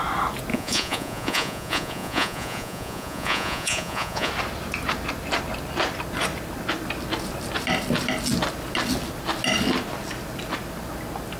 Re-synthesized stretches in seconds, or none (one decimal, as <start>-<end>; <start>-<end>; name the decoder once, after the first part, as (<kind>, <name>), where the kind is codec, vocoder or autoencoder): 0.5-4.3 (vocoder, Vocos)